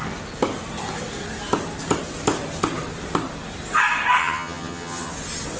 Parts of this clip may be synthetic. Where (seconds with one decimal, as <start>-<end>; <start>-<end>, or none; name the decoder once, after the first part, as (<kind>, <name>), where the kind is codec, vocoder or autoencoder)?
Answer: 4.2-5.1 (vocoder, HiFi-GAN)